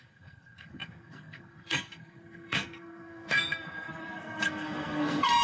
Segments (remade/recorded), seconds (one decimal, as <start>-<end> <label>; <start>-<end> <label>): 0.0-5.4 remade